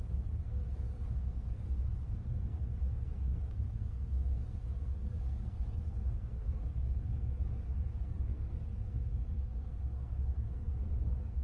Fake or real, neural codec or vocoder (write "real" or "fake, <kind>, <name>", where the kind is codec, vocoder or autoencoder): fake, codec, SNAC